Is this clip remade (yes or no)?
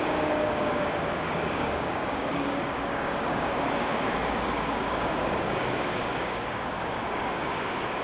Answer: yes